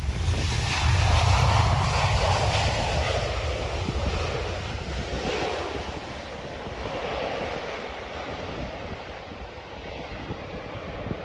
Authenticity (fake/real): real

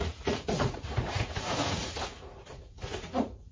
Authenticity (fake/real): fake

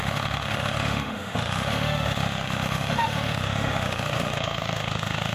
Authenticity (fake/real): fake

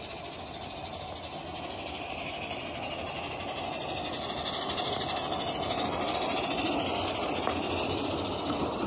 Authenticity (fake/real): real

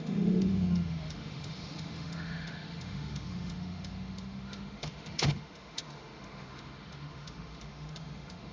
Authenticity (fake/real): fake